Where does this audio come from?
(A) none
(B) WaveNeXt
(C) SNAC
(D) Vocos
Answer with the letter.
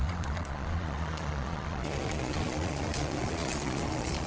D